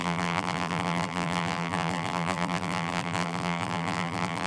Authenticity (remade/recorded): remade